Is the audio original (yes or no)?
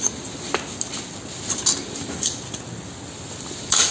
yes